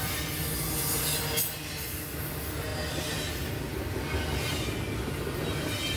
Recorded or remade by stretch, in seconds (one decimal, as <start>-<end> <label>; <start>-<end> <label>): 0.0-6.0 recorded